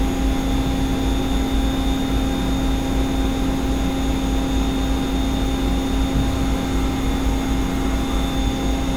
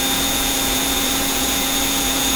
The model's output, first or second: second